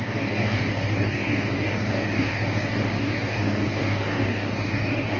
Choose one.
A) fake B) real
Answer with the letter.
A